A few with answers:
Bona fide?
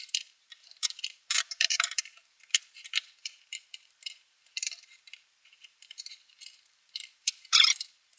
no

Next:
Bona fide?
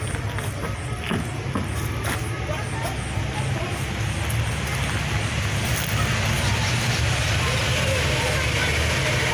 yes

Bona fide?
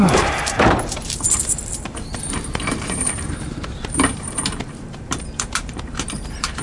no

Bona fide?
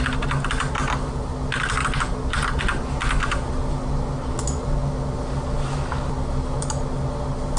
yes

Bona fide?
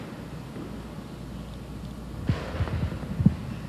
yes